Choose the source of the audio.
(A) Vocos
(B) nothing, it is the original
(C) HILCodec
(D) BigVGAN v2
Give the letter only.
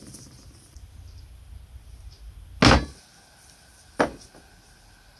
B